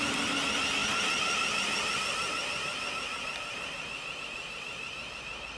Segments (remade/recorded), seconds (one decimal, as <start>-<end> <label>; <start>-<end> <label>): 0.0-5.6 recorded